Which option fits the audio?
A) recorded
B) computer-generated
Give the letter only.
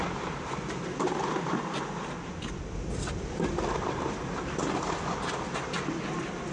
A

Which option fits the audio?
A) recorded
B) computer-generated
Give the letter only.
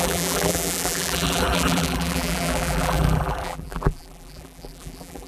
B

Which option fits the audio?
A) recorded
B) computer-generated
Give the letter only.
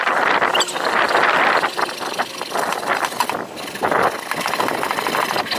A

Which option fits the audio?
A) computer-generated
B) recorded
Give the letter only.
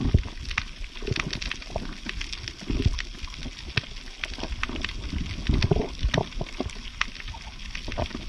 B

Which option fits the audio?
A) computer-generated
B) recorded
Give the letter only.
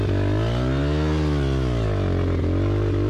B